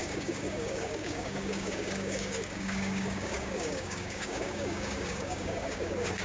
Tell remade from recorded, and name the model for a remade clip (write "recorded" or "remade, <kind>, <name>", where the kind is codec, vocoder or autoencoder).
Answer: remade, codec, DAC